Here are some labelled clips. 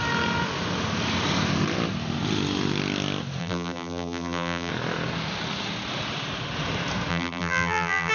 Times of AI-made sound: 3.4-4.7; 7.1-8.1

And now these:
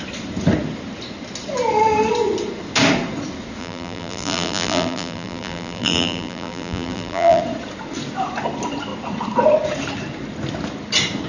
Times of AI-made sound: 3.6-7.4

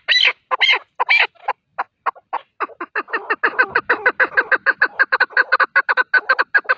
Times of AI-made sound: 1.7-5.8

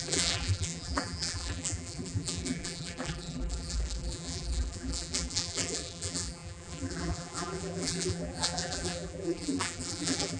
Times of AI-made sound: 0.0-10.4

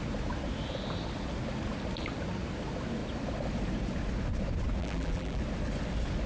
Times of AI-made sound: 4.8-5.4

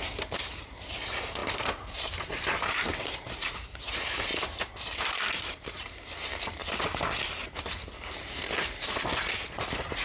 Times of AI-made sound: 0.0-6.6

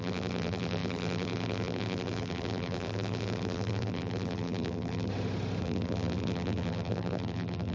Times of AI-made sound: 0.0-5.1; 5.6-7.7